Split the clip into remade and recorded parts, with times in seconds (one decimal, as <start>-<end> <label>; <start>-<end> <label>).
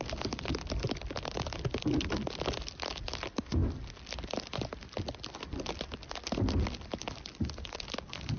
0.0-8.4 recorded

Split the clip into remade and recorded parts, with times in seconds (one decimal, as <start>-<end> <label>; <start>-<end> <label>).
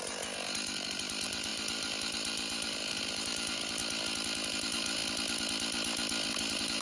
0.0-3.8 remade; 3.8-4.5 recorded; 4.5-5.0 remade; 5.0-6.3 recorded; 6.3-6.8 remade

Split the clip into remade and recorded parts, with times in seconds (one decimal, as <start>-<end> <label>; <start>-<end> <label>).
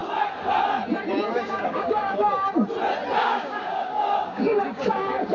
0.0-1.3 recorded; 1.3-2.3 remade; 2.3-3.2 recorded; 3.2-5.3 remade